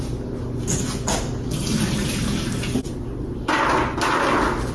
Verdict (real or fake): real